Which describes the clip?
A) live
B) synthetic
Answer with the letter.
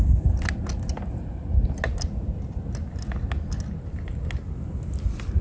A